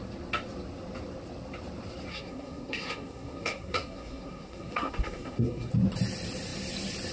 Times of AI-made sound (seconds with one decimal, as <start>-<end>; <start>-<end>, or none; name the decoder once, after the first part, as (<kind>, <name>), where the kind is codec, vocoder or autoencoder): 2.1-5.7 (codec, SNAC)